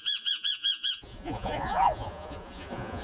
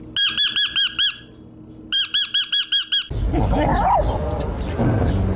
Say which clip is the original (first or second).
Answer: second